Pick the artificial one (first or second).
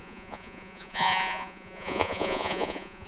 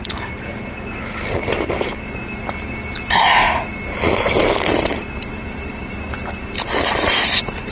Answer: first